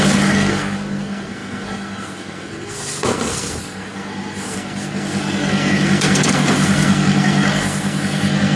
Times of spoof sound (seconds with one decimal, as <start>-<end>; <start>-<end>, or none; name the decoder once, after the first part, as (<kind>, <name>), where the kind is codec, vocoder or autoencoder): 0.0-8.6 (codec, SNAC)